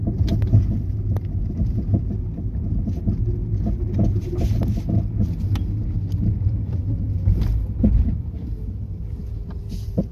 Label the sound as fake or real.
real